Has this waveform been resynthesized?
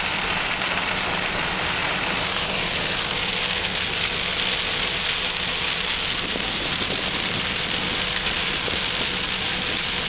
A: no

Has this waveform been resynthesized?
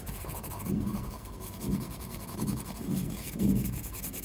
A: yes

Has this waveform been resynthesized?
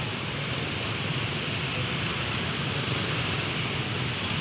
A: no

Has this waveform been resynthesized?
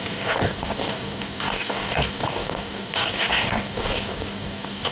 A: yes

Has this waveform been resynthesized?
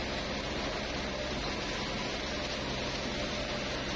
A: no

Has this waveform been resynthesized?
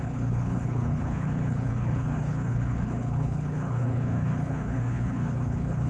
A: yes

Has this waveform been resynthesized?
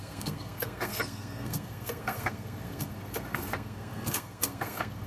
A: yes